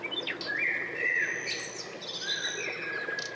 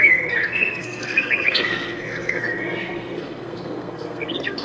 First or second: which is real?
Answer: first